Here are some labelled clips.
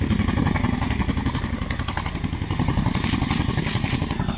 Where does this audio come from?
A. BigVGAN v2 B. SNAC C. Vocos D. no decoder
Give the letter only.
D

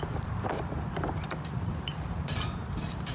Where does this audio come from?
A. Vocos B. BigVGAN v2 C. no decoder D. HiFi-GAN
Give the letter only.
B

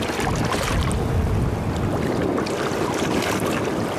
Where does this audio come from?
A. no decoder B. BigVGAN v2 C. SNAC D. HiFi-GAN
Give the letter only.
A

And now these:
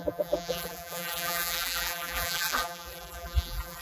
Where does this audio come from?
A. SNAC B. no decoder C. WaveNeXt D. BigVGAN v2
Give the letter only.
D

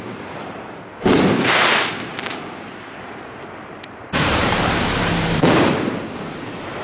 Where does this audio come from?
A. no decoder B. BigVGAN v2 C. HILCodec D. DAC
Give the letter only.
B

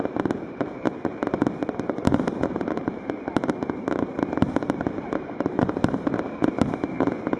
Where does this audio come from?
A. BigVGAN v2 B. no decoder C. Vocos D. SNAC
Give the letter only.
A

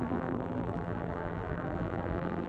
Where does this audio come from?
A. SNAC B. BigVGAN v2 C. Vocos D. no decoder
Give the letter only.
B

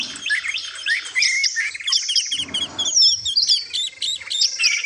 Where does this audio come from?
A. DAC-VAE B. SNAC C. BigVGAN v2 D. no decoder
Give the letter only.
D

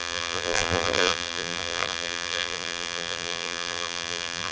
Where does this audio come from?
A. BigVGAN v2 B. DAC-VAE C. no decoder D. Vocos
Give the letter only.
A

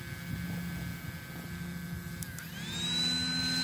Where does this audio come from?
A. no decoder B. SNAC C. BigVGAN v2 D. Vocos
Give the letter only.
A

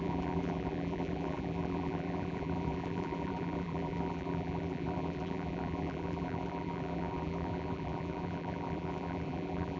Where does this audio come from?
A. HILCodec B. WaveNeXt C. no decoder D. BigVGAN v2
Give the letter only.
D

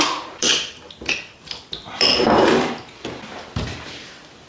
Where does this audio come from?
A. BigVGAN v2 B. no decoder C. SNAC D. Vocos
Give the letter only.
A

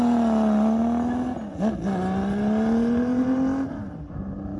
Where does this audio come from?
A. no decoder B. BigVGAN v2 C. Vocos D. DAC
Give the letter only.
A